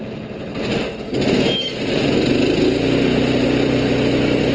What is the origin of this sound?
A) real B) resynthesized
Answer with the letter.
A